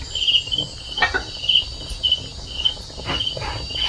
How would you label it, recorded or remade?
recorded